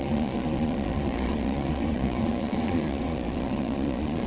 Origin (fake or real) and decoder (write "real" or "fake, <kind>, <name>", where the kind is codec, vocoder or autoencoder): fake, vocoder, Vocos